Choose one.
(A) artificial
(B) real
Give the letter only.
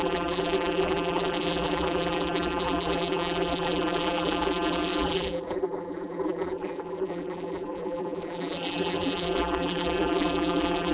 A